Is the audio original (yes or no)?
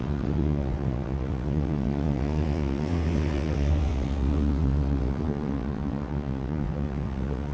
no